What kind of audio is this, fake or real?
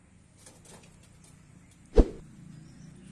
real